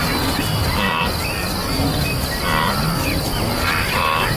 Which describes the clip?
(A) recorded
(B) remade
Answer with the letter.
A